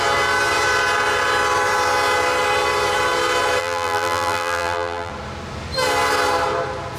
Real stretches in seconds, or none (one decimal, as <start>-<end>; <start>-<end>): 0.0-3.6; 5.1-7.0